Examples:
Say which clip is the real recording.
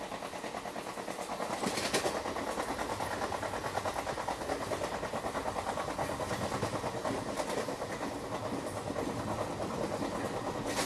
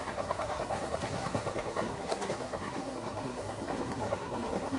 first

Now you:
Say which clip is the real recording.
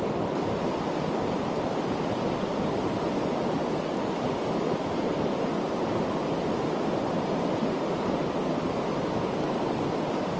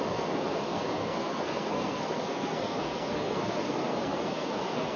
first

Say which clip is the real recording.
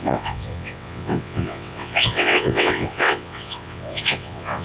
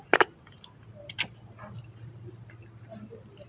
second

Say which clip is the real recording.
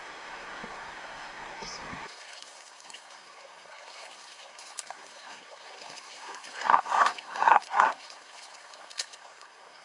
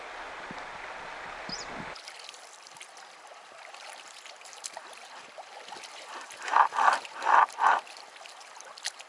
second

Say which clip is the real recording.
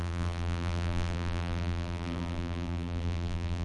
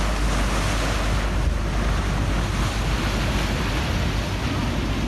second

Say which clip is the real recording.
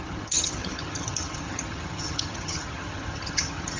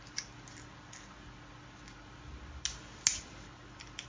second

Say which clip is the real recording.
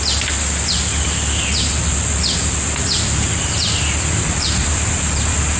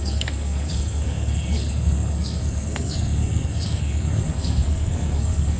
first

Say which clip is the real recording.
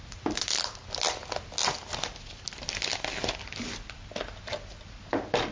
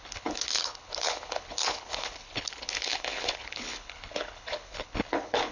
first